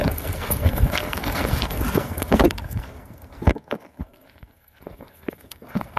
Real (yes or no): no